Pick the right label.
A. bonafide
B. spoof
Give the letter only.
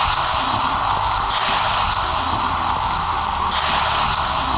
A